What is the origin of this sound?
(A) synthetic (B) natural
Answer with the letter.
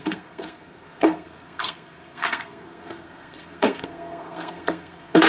A